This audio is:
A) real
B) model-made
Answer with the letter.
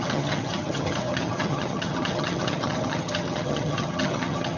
B